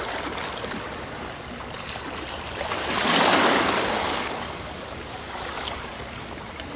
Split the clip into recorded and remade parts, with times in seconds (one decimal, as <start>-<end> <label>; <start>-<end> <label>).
0.0-2.8 recorded; 2.8-6.3 remade; 6.3-6.8 recorded